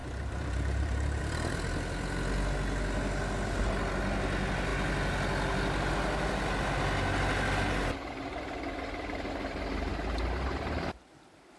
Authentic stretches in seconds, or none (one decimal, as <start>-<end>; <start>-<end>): 1.2-11.6